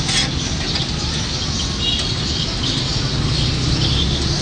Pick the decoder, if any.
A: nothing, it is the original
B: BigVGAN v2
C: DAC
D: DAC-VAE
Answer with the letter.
A